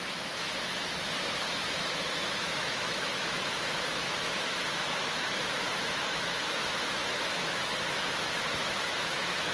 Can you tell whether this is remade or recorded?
remade